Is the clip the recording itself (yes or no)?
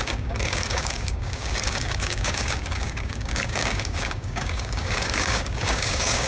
no